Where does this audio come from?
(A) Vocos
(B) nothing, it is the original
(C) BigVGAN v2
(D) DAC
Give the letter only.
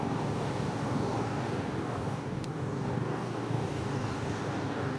D